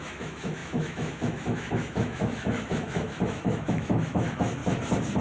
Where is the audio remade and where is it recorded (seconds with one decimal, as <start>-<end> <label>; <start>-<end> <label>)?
0.0-4.6 remade; 4.6-5.2 recorded